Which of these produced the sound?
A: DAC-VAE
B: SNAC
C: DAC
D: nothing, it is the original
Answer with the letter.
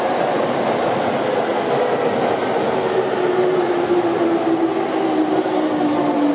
D